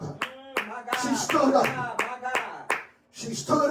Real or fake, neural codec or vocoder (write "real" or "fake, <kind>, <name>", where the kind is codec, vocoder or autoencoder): real